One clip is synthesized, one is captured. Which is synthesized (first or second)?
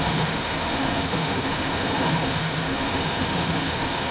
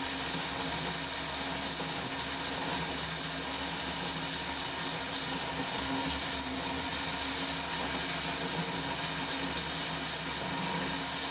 first